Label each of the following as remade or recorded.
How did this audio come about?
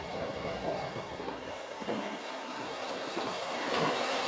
remade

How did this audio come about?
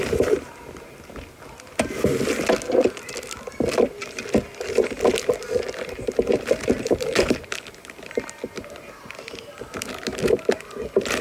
recorded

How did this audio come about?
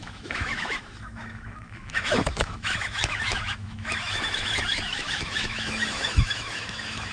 remade